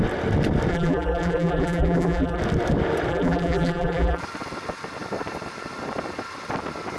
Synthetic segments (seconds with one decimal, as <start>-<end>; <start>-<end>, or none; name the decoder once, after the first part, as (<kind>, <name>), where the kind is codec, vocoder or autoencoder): 0.7-2.4 (vocoder, BigVGAN v2); 3.1-4.2